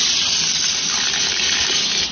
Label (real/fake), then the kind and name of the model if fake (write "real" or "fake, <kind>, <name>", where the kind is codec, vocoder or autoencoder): real